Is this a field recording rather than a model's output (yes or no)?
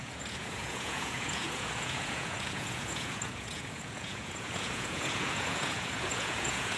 no